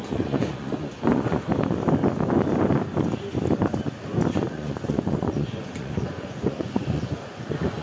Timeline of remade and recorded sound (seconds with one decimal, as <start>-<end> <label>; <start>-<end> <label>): 0.0-1.5 remade; 1.5-4.3 recorded; 4.3-7.8 remade